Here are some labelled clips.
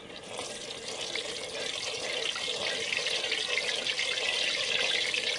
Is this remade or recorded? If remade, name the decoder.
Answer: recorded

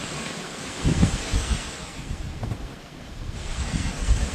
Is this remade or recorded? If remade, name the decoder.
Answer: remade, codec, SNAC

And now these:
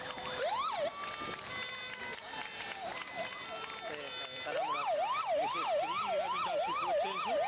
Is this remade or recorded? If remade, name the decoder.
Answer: recorded